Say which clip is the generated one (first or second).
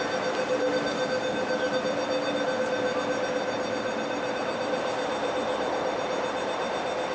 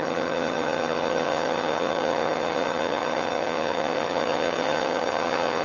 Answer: second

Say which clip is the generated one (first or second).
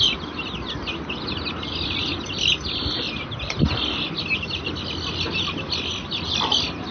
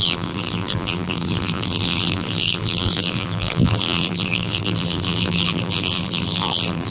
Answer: second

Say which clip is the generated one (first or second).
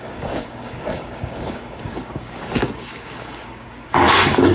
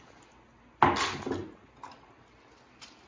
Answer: first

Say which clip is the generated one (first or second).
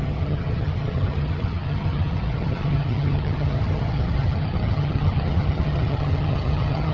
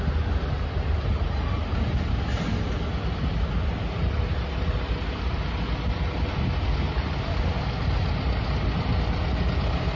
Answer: first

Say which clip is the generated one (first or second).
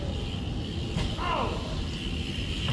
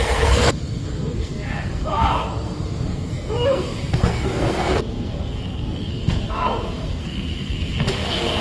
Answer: second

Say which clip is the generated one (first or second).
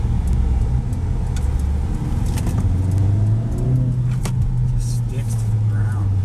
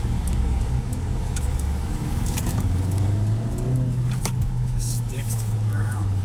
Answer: second